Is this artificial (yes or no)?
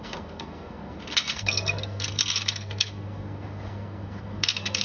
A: yes